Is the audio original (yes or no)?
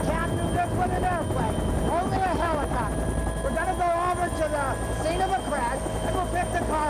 yes